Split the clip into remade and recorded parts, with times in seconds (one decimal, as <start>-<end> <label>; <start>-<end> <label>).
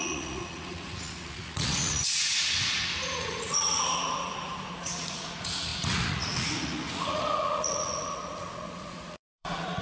0.0-9.8 remade